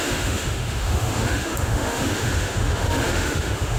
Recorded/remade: remade